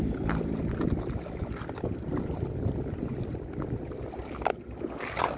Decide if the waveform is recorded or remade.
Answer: recorded